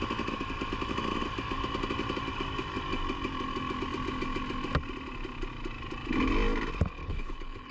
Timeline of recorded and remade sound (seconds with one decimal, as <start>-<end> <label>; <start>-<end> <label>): 0.0-7.0 recorded; 7.0-7.7 remade